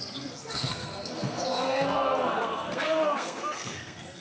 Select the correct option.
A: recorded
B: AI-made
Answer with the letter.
B